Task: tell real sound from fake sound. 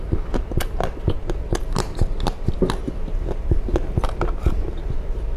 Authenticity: real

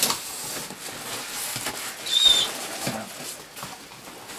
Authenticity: real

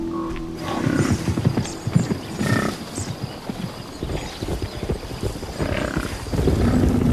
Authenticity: real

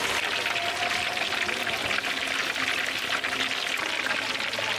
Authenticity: real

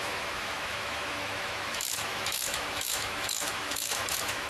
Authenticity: fake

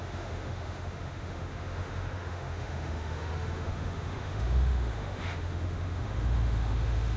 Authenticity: fake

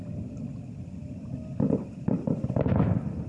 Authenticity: real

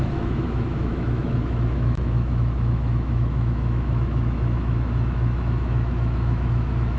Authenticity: fake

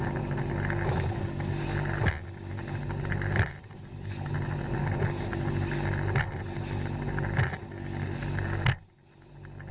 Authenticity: real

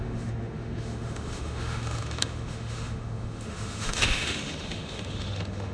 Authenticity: fake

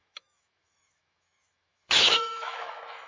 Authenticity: fake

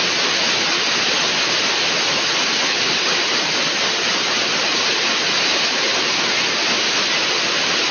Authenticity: real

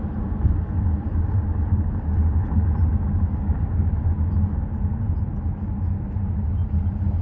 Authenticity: real